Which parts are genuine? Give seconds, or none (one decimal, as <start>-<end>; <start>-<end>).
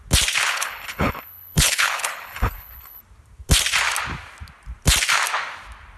0.0-0.5; 3.0-6.0